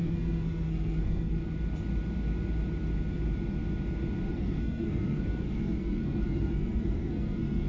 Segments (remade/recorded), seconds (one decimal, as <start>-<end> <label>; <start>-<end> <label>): 0.0-1.4 remade; 1.4-4.3 recorded; 4.3-7.7 remade

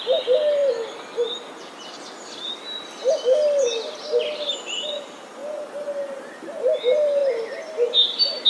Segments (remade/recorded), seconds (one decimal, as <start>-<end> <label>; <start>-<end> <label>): 0.0-0.6 remade; 0.6-3.9 recorded; 3.9-5.4 remade; 5.4-6.3 recorded; 6.3-8.5 remade

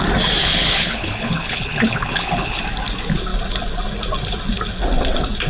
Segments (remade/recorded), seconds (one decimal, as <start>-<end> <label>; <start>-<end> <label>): 0.0-0.4 recorded; 0.4-2.6 remade; 2.6-5.5 recorded